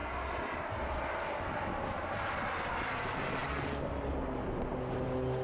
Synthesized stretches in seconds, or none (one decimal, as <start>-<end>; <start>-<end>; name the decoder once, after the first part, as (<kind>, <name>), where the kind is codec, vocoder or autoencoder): none